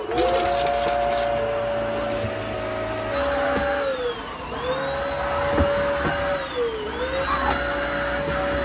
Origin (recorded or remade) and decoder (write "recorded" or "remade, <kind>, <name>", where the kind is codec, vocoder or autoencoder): recorded